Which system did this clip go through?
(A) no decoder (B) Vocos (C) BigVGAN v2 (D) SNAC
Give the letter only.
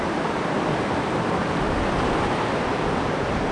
A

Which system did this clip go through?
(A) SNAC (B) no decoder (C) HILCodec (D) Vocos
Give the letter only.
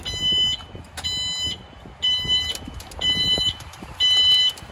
B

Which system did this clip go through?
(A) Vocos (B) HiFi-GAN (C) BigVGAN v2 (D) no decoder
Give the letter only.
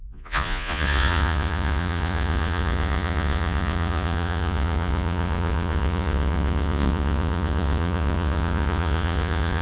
A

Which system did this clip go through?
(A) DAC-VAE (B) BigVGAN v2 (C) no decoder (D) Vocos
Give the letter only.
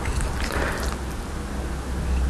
C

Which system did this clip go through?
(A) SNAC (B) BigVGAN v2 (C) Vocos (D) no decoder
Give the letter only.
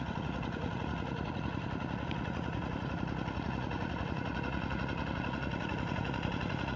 C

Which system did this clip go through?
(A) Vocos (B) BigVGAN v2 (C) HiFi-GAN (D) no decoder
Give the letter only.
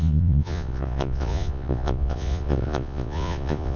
A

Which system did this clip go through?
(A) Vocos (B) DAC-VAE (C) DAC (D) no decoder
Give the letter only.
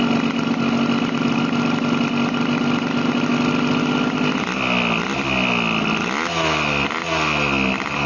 D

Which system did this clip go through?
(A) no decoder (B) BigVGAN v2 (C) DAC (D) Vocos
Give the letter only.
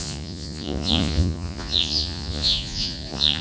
D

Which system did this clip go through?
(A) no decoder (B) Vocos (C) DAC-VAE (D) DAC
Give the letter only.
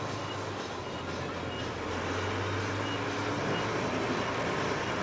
A